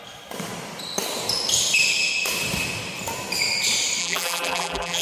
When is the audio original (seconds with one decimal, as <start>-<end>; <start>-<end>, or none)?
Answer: 0.0-4.0